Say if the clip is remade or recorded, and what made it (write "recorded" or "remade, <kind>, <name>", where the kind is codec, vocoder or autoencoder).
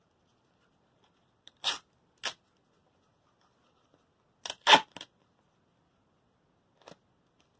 recorded